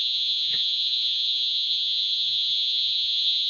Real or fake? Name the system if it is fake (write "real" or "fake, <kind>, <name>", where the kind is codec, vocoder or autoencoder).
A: fake, vocoder, Vocos